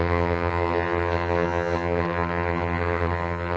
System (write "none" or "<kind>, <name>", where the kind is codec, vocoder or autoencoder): vocoder, HiFi-GAN